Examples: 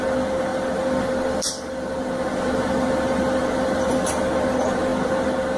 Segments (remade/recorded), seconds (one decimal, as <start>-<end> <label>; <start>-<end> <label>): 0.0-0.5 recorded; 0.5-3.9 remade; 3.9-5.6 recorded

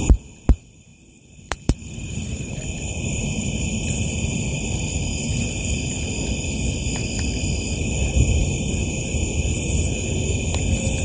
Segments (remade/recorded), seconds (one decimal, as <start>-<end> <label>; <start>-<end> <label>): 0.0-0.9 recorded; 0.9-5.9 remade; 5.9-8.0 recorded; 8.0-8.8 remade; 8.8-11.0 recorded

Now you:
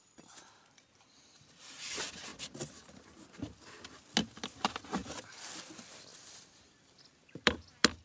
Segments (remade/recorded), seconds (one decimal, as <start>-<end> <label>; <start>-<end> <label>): 0.0-2.3 recorded; 2.3-3.7 remade; 3.7-5.0 recorded; 5.0-5.6 remade; 5.6-6.1 recorded; 6.1-8.0 remade